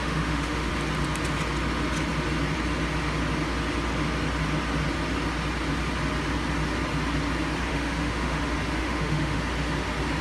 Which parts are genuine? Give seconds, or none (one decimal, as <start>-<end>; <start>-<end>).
0.7-7.7; 8.4-8.8; 9.4-10.2